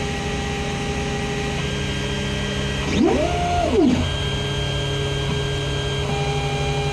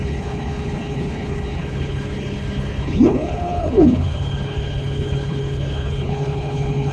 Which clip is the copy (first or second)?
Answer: second